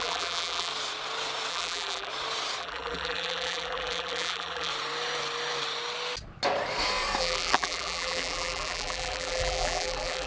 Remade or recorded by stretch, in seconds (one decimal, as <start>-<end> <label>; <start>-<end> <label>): 0.0-0.7 remade; 0.7-1.5 recorded; 1.5-2.1 remade; 2.1-2.6 recorded; 2.6-4.7 remade; 4.7-7.2 recorded; 7.2-10.3 remade